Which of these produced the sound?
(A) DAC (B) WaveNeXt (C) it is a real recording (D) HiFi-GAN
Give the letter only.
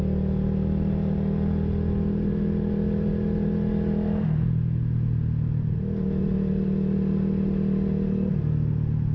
C